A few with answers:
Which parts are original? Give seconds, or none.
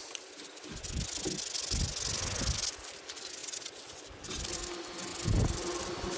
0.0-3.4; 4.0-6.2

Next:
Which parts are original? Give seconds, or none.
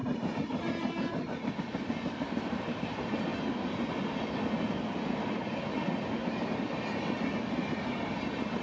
3.3-7.5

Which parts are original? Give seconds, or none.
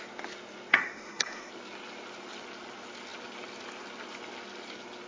0.0-0.7; 1.5-5.1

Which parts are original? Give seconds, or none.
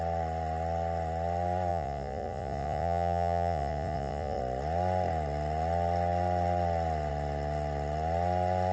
0.0-1.7; 4.4-8.7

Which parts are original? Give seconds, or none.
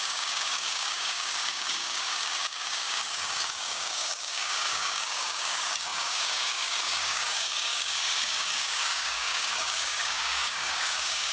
none